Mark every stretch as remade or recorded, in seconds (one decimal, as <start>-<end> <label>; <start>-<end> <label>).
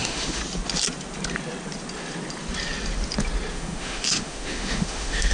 0.0-0.4 remade; 0.4-3.5 recorded; 3.5-5.3 remade